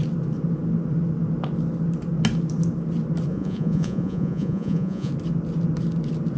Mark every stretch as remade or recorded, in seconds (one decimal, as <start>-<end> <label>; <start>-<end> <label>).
0.0-3.3 recorded; 3.3-5.1 remade; 5.1-6.4 recorded